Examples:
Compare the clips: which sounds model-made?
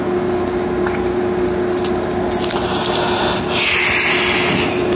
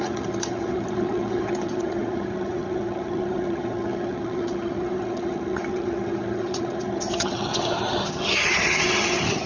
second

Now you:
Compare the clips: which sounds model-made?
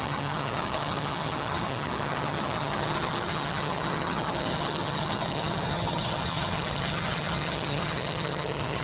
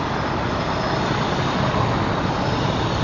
first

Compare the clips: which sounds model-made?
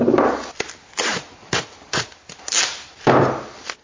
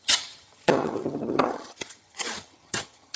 second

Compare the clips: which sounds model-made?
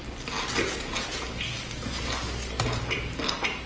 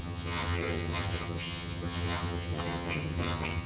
second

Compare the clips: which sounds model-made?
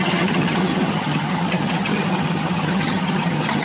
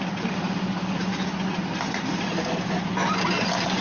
first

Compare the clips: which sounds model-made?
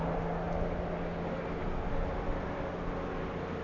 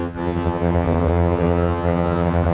second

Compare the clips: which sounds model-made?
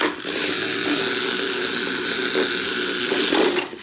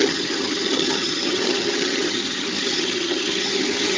second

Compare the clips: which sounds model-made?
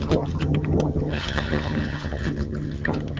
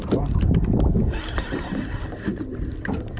first